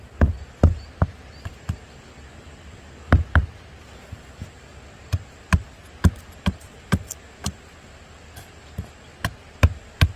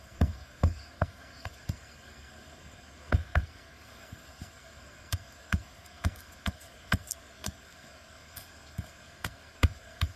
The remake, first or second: second